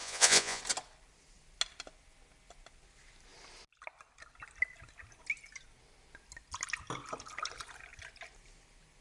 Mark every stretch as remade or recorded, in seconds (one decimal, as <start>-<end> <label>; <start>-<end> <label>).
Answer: 0.0-0.6 remade; 0.6-9.0 recorded